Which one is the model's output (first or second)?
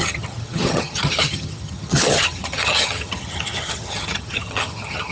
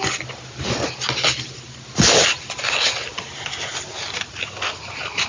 first